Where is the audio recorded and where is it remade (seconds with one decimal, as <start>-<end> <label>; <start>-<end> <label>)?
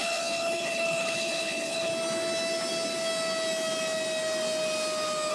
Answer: 0.0-1.9 remade; 1.9-5.3 recorded